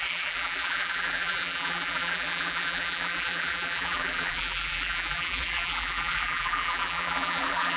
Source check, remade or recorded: remade